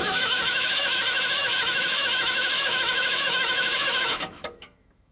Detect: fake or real fake